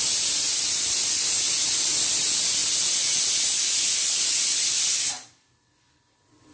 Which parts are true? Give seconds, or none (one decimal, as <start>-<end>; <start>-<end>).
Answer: 0.0-6.5